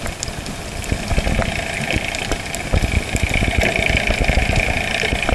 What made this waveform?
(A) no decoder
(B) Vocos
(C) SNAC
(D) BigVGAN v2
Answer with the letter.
A